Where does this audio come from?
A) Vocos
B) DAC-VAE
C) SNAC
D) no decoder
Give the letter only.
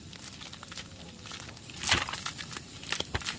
D